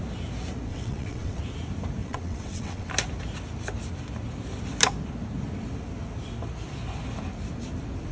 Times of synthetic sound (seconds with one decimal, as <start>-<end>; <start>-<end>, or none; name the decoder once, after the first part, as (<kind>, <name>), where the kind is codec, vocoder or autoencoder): 0.7-1.4 (vocoder, WaveNeXt); 2.0-2.9